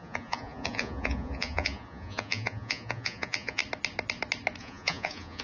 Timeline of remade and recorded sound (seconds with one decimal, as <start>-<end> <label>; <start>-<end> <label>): 0.0-3.6 remade; 3.6-4.6 recorded; 4.6-5.4 remade